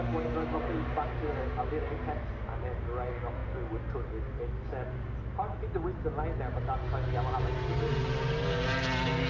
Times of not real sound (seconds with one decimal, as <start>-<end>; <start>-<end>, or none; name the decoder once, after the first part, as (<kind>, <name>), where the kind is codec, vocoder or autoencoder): none